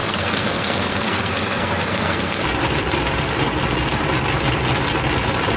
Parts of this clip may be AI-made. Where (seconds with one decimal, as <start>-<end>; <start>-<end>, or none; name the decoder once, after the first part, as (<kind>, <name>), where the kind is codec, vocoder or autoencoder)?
0.0-2.4 (codec, SNAC)